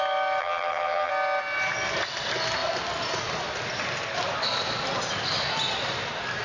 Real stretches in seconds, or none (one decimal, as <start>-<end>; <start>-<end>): 0.0-0.4; 1.1-6.4

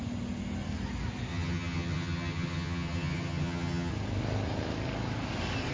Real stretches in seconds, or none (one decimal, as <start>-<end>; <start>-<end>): 0.0-1.3; 3.9-5.7

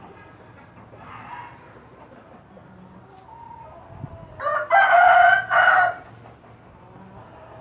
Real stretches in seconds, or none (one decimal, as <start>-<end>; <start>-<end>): 0.0-7.6

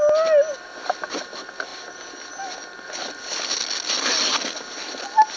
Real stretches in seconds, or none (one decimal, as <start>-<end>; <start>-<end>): 0.0-5.4

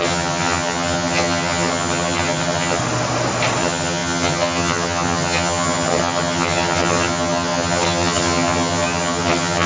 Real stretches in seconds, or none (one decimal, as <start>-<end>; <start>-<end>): 2.8-3.6

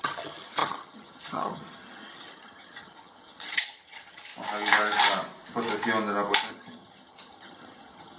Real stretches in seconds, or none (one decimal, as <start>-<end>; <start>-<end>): 4.3-6.5

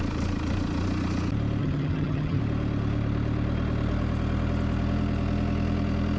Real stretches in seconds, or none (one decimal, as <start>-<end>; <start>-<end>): 0.0-1.6; 2.4-6.2